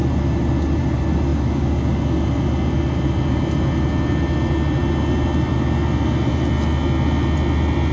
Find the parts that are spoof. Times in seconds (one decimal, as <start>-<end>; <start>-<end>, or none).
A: none